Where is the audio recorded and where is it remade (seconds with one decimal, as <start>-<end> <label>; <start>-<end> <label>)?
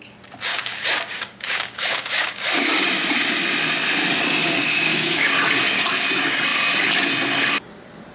0.0-0.5 recorded; 0.5-2.9 remade; 2.9-4.4 recorded; 4.4-5.3 remade; 5.3-8.1 recorded